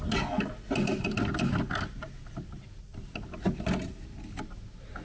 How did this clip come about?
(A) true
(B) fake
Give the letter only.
A